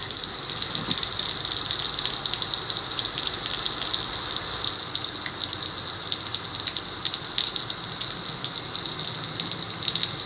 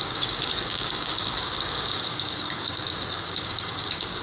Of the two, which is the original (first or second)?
first